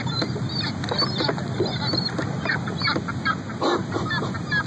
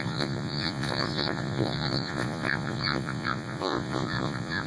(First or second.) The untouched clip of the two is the first